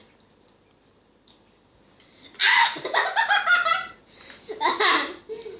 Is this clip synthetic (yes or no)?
yes